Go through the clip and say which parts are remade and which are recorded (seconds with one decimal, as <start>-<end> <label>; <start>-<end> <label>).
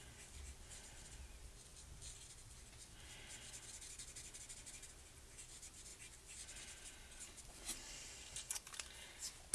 0.0-9.5 recorded